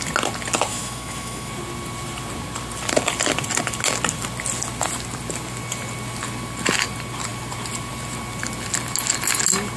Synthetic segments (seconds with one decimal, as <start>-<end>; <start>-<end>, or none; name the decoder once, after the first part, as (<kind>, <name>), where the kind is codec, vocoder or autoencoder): 0.7-1.5 (autoencoder, DAC-VAE)